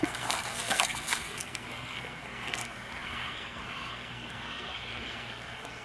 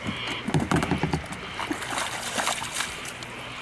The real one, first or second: second